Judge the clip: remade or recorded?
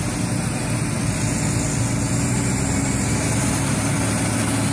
recorded